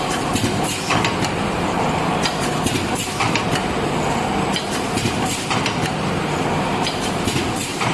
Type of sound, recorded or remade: remade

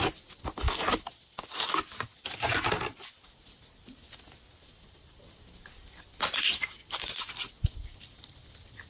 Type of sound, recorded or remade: recorded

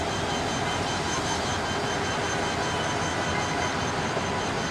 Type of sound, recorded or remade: recorded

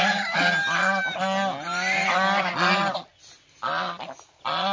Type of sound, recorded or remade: recorded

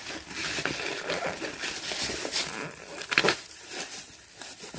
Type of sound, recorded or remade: recorded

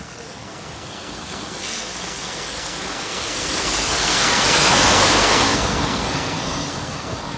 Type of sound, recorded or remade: remade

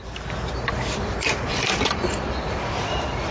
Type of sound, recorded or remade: remade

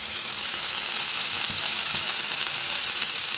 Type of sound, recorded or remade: remade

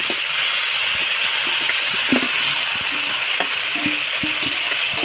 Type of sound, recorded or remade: recorded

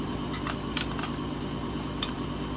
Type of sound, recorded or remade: remade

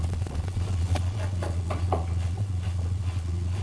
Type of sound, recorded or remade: remade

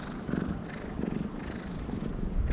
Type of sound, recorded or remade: recorded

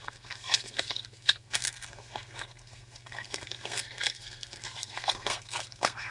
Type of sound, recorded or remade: remade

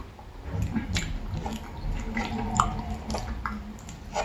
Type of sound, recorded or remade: recorded